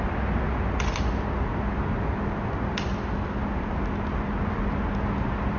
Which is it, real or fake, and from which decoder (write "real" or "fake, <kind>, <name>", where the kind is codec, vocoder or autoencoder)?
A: real